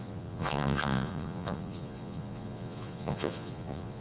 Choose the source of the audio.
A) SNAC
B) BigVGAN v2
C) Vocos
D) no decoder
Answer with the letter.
C